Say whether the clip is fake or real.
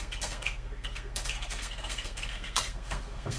fake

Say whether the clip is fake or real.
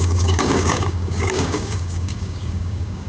fake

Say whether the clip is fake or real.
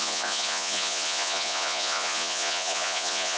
fake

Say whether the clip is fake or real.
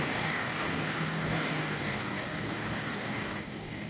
fake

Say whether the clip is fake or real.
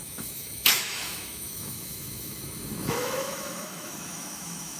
fake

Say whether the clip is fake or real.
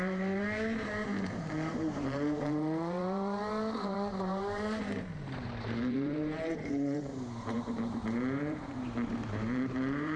fake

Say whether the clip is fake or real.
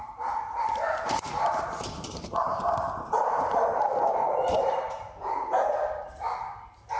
fake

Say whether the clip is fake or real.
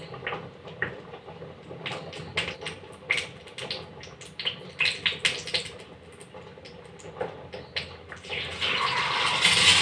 real